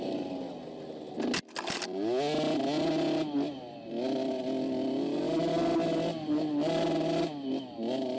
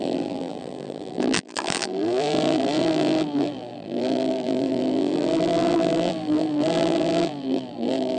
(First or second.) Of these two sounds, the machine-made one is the second